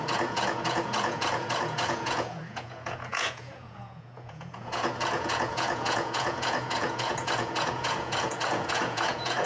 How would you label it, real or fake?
fake